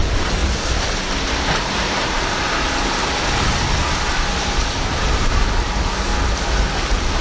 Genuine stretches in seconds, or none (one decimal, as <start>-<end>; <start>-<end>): 6.1-7.2